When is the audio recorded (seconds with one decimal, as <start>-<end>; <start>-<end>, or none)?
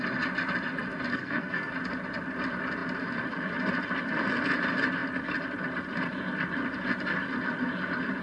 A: 0.0-1.1; 1.7-8.2